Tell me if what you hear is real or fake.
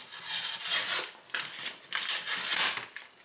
real